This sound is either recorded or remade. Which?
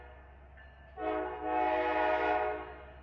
recorded